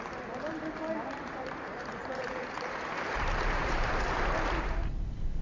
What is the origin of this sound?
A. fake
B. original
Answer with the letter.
A